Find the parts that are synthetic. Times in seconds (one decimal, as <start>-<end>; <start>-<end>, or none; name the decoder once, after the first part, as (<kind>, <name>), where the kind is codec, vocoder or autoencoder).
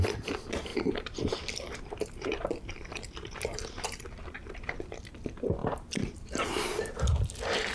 0.7-5.0 (vocoder, BigVGAN v2); 5.6-7.0